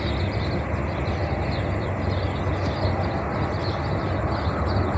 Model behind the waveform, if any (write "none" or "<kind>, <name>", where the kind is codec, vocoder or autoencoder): none